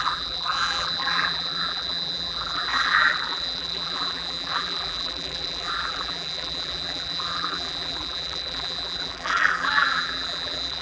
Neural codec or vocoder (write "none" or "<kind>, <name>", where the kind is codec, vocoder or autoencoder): vocoder, BigVGAN v2